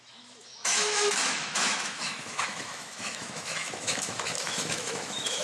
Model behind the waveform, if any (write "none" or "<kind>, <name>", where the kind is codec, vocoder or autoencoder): autoencoder, DAC-VAE